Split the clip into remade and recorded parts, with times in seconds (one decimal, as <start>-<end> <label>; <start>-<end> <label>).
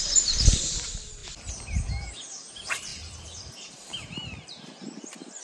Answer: 0.0-1.2 remade; 1.2-2.2 recorded; 2.2-5.4 remade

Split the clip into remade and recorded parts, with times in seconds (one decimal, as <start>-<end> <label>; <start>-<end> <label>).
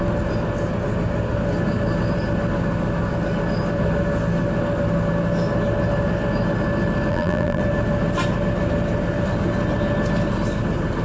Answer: 0.0-7.1 recorded; 7.1-7.6 remade; 7.6-11.0 recorded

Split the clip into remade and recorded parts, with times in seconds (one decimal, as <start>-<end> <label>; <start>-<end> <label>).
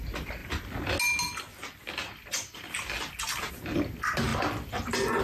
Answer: 0.0-5.2 recorded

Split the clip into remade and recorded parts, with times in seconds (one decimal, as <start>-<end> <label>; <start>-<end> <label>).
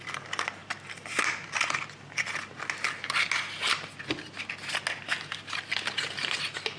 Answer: 0.0-6.8 recorded